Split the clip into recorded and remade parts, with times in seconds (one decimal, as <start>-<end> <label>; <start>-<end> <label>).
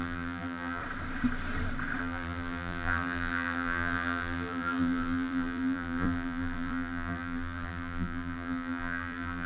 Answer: 0.0-0.8 remade; 0.8-2.0 recorded; 2.0-9.5 remade